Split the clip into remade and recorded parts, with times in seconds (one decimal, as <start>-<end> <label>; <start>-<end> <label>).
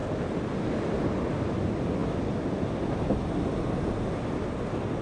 0.0-5.0 recorded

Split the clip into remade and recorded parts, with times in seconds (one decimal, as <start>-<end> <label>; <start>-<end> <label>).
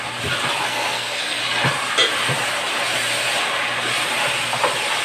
0.0-0.7 recorded; 0.7-1.4 remade; 1.4-5.0 recorded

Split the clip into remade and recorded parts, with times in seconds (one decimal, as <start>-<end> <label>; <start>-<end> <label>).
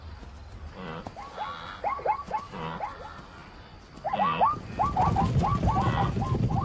0.0-6.6 recorded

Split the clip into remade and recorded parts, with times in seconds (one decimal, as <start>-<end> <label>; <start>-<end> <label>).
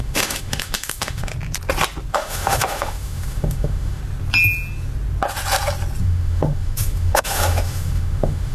0.0-1.3 remade; 1.3-2.1 recorded; 2.1-4.0 remade; 4.0-6.0 recorded; 6.0-8.5 remade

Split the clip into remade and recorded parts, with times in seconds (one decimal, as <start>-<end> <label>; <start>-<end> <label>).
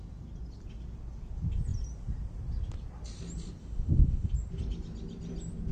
0.0-3.6 recorded; 3.6-4.3 remade; 4.3-5.7 recorded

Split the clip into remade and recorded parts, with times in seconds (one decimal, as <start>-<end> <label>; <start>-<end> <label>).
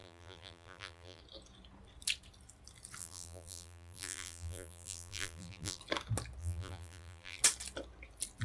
0.0-1.2 remade; 1.2-3.0 recorded; 3.0-5.8 remade; 5.8-6.4 recorded; 6.4-7.4 remade; 7.4-8.4 recorded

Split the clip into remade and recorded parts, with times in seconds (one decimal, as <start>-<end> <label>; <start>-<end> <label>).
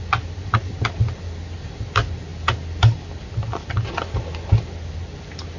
0.0-5.6 recorded